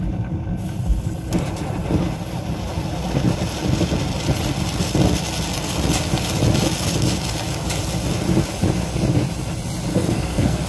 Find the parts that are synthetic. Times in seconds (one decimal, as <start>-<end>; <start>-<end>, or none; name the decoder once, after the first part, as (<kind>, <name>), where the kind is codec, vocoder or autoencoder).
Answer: 9.9-10.7 (codec, SNAC)